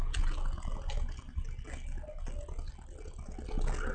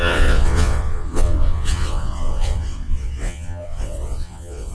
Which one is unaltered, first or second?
first